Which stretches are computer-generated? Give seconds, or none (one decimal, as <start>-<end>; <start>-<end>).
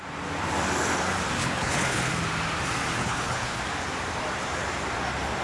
1.4-2.1; 3.0-3.6